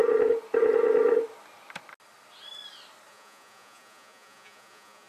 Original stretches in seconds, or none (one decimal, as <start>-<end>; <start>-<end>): 0.0-3.1